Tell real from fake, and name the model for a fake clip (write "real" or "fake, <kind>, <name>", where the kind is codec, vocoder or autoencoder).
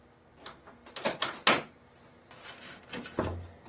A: real